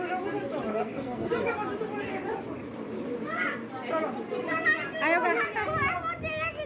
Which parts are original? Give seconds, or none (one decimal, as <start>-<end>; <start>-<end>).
0.0-0.7; 1.3-6.7